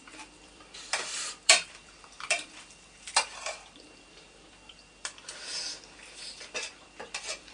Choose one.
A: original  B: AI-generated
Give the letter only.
B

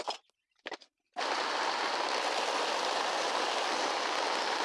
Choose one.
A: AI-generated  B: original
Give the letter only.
B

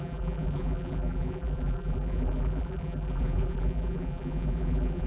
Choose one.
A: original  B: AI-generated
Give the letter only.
B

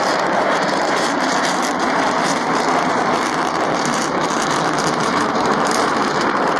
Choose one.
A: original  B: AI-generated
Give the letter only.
B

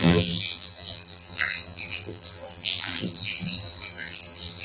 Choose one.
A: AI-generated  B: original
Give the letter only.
A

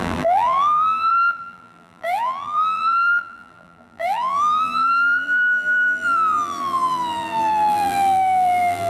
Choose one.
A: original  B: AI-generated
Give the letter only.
B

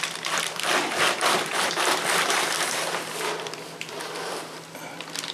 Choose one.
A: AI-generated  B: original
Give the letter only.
A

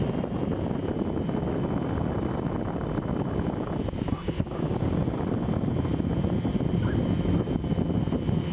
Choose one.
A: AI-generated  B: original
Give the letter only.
B